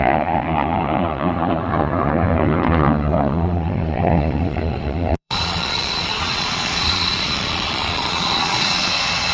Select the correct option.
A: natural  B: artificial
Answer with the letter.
B